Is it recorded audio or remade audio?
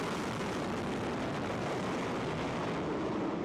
recorded